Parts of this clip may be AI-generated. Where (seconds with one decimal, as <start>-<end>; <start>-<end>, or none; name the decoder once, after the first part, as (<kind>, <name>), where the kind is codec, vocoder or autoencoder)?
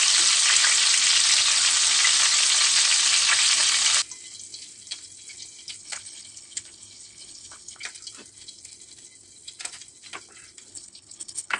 5.8-7.8 (codec, HILCodec); 10.7-11.6